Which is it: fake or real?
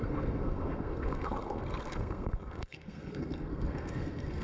fake